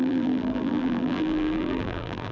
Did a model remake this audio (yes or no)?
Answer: yes